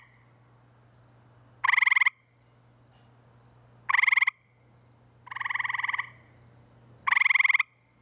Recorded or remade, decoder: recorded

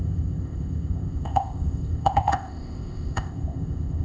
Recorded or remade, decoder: remade, codec, ZipCodec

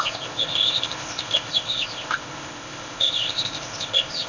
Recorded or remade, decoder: remade, codec, ZipCodec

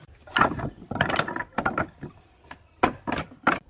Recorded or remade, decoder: recorded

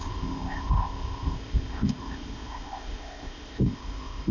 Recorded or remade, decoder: remade, codec, ZipCodec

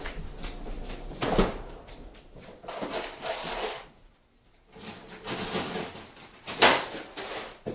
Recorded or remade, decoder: recorded